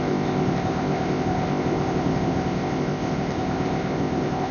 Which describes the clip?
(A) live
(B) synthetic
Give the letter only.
B